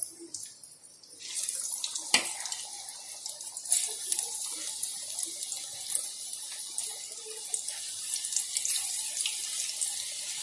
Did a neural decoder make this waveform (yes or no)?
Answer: no